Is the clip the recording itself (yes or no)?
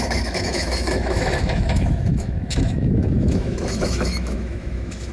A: no